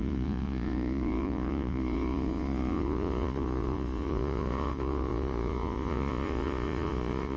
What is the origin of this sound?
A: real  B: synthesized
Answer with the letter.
B